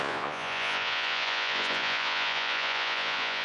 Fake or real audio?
fake